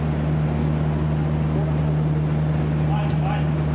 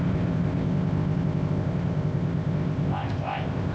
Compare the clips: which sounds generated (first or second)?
second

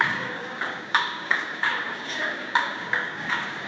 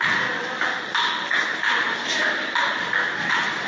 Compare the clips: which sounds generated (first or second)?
first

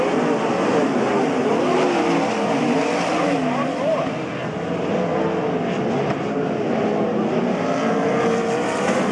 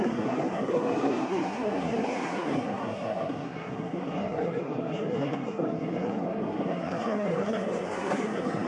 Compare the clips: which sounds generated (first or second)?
second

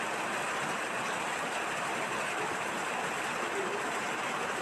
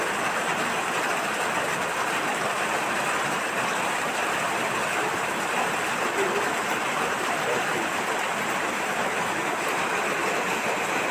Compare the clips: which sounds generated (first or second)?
second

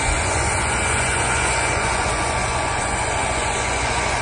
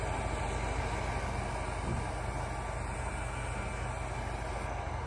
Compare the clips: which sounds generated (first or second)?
first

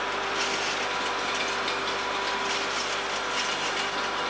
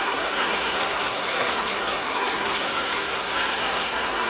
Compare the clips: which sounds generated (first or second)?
second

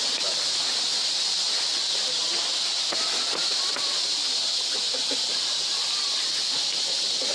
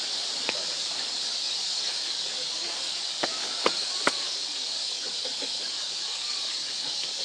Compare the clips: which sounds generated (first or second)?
second